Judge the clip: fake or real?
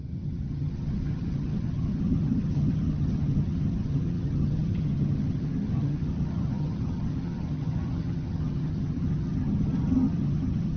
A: fake